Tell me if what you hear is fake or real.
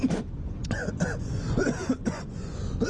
fake